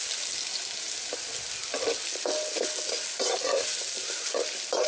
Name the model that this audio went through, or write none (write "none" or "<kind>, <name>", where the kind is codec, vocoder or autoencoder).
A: none